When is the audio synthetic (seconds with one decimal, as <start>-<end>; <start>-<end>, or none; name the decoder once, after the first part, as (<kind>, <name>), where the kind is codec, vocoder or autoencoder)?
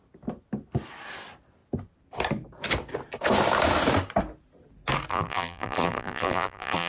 5.1-6.9 (vocoder, BigVGAN v2)